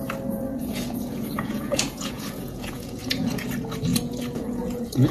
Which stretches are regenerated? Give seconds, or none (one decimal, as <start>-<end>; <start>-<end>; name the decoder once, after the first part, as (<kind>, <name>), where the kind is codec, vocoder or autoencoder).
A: 0.6-3.5 (vocoder, Vocos); 3.9-5.1